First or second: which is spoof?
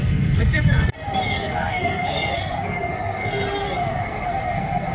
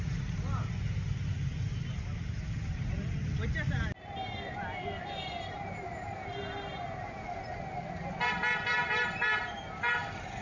first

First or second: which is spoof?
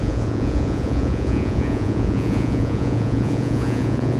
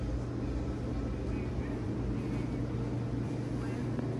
first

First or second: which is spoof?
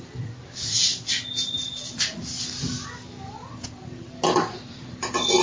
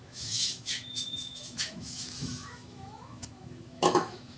second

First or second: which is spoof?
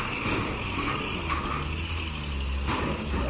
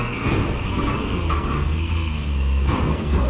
second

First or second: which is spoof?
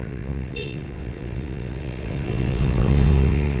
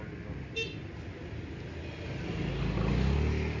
first